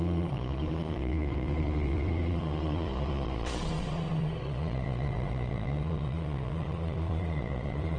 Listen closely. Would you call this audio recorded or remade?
remade